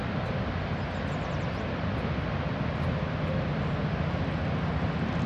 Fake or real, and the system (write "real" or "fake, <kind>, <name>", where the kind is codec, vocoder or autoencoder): real